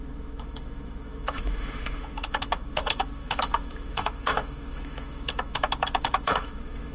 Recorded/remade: remade